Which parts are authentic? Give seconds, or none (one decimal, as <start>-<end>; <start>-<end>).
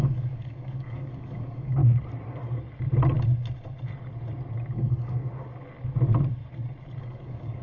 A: 1.8-4.7; 5.2-7.0